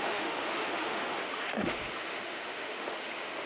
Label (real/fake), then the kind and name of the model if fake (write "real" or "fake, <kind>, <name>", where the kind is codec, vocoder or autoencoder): fake, autoencoder, DAC-VAE